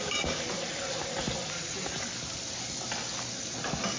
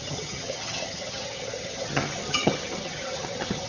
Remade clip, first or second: second